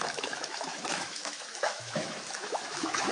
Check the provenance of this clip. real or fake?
fake